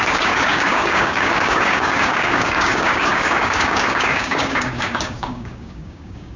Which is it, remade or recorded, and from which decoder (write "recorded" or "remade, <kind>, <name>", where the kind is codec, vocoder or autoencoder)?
remade, codec, DAC